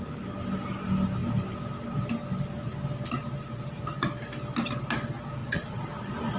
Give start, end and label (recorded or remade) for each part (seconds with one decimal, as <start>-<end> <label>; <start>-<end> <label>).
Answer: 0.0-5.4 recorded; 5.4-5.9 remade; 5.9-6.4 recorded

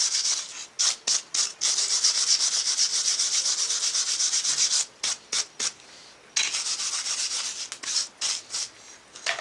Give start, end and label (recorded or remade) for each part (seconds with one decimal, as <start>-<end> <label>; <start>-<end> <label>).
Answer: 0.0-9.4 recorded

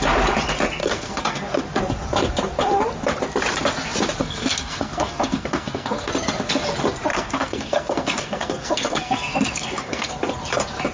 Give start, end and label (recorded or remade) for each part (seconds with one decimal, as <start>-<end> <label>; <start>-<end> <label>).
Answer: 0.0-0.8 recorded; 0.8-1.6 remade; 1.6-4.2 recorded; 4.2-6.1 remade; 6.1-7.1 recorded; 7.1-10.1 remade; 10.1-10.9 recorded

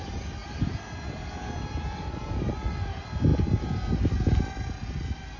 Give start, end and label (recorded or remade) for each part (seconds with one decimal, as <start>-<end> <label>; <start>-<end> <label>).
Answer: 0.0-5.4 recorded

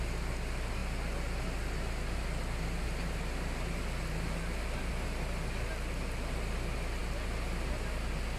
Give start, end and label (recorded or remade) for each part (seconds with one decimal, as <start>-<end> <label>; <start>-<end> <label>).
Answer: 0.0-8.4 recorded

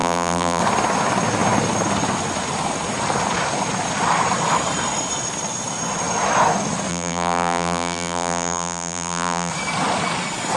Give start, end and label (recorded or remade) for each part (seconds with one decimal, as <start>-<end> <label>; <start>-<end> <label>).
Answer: 0.0-0.6 remade; 0.6-6.9 recorded; 6.9-9.5 remade; 9.5-10.6 recorded

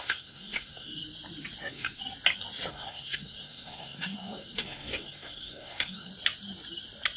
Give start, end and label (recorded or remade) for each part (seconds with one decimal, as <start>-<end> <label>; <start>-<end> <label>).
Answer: 0.0-1.0 remade; 1.0-1.6 recorded; 1.6-2.0 remade; 2.0-2.7 recorded; 2.7-6.1 remade; 6.1-7.2 recorded